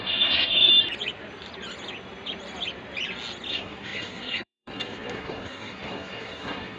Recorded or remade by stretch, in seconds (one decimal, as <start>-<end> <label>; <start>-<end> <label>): 0.0-0.7 remade; 0.7-3.5 recorded; 3.5-6.8 remade